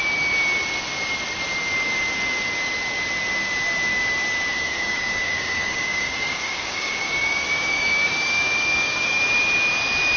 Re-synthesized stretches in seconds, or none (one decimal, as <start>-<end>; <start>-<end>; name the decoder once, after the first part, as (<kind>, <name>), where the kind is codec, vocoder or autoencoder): 4.5-9.2 (codec, DAC)